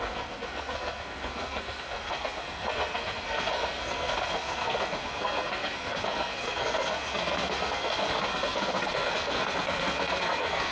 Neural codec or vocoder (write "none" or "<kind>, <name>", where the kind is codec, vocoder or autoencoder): codec, SNAC